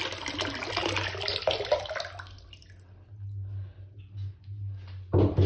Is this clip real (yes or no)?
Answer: yes